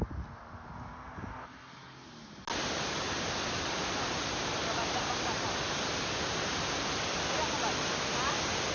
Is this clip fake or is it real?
real